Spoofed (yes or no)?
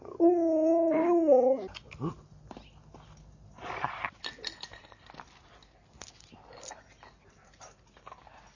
no